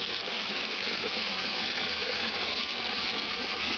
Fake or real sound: fake